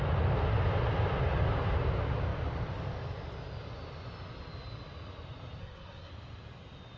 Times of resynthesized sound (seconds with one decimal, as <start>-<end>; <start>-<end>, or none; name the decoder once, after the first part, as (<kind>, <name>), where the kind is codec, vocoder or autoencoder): 5.6-6.1 (codec, SNAC)